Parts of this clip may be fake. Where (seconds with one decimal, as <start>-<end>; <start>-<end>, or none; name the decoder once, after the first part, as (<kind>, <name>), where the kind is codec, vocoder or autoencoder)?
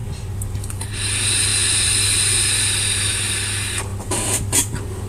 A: 0.0-0.8 (vocoder, BigVGAN v2); 3.9-5.1